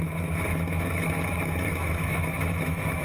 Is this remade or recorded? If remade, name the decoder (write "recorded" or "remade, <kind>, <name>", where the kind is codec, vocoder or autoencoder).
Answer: remade, autoencoder, DAC-VAE